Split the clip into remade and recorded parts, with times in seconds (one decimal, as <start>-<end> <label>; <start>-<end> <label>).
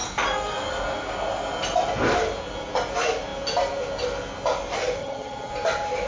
0.0-5.0 recorded; 5.0-5.5 remade; 5.5-6.1 recorded